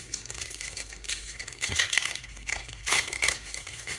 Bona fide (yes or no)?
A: no